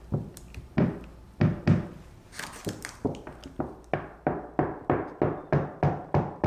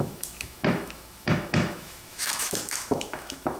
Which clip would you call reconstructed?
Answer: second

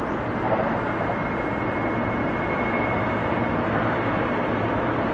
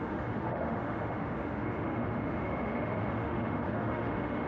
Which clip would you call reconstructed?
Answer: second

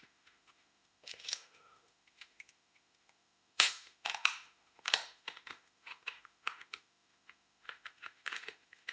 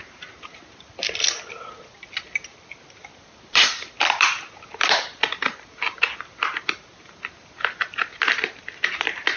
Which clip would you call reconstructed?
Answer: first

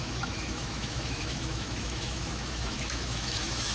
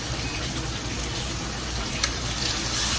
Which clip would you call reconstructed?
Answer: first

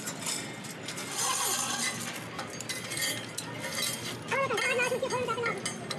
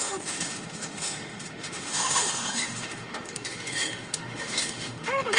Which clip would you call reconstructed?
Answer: second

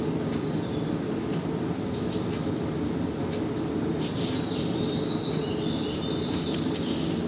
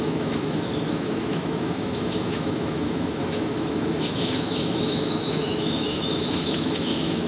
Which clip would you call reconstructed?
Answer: second